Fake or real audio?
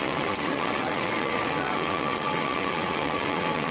fake